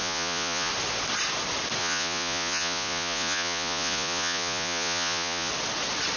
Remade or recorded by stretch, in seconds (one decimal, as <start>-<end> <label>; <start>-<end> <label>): 0.0-0.7 remade; 0.7-1.8 recorded; 1.8-5.5 remade; 5.5-6.2 recorded